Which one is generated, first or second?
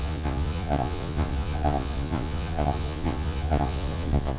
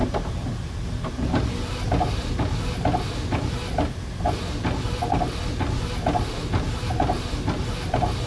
first